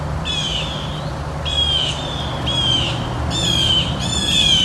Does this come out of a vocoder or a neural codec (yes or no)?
no